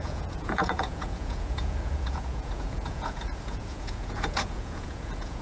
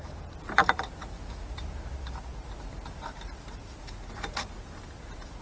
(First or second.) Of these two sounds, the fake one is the first